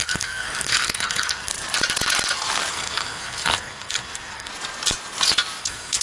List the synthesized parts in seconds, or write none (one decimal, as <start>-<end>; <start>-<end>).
0.0-1.5; 2.7-4.5; 5.6-6.0